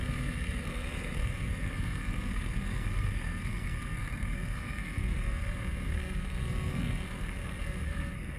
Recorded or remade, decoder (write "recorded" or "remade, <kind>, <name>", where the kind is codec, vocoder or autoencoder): remade, codec, SNAC